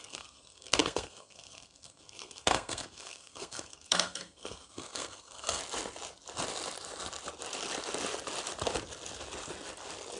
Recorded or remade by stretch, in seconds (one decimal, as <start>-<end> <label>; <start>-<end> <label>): 0.0-5.6 remade; 5.6-10.2 recorded